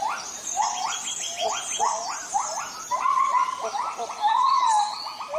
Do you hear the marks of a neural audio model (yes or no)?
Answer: no